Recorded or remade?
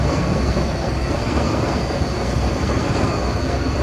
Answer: remade